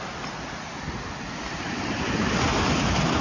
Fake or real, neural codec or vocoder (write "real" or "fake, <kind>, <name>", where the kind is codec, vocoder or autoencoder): fake, vocoder, BigVGAN v2